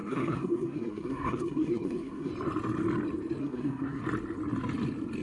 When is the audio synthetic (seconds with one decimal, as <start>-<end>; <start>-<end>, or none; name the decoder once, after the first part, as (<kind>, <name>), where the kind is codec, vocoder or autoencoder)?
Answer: 0.0-2.3 (codec, SNAC); 3.4-4.0